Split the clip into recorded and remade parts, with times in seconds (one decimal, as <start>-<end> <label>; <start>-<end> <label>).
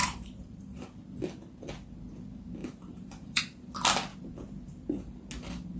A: 0.0-0.8 remade; 0.8-2.6 recorded; 2.6-3.4 remade; 3.4-4.1 recorded; 4.1-5.1 remade; 5.1-5.8 recorded